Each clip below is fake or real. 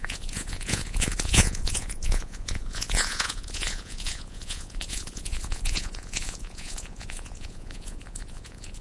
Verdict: fake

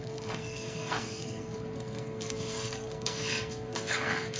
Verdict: fake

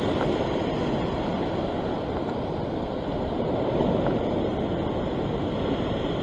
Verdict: real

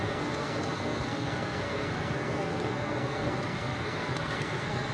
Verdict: fake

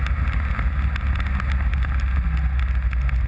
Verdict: real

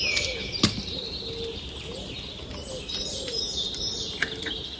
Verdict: real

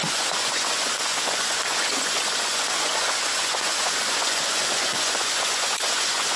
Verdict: fake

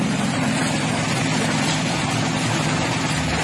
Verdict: fake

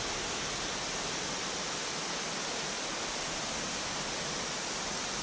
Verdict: real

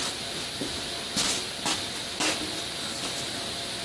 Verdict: real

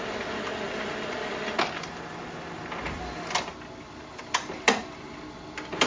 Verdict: real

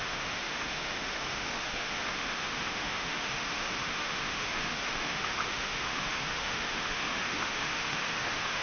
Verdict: fake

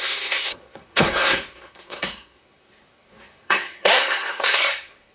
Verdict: fake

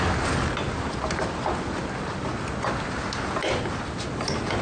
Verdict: real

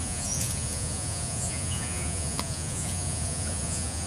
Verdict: fake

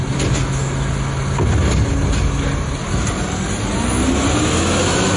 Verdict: real